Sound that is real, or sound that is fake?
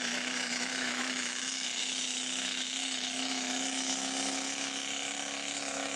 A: fake